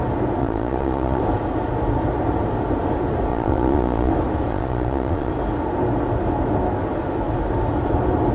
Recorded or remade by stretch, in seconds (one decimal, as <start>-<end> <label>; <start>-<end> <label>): 0.0-0.4 recorded; 0.4-1.2 remade; 1.2-3.3 recorded; 3.3-4.1 remade; 4.1-4.5 recorded; 4.5-5.3 remade; 5.3-8.3 recorded